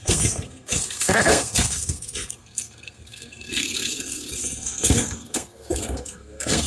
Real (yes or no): no